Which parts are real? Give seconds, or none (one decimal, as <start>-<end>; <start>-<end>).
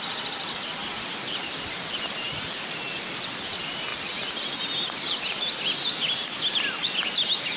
0.0-7.6